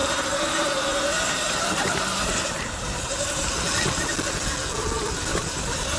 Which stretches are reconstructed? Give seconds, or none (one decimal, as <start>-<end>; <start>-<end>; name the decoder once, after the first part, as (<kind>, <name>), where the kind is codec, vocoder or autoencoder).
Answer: 0.0-3.6 (vocoder, BigVGAN v2); 5.3-6.0